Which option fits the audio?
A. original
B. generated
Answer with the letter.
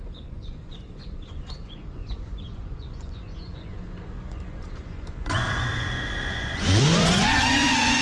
B